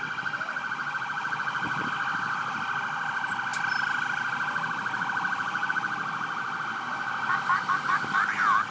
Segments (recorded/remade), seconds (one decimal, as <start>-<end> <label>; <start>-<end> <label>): 0.0-8.7 recorded